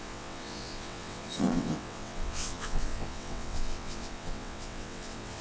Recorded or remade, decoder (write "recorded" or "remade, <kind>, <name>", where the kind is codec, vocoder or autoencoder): remade, vocoder, WaveNeXt